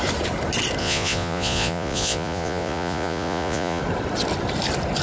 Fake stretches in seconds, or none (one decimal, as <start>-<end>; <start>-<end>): 0.8-3.8